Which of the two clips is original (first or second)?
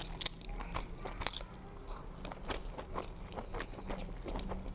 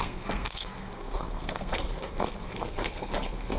first